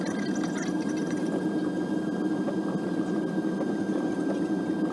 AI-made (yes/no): no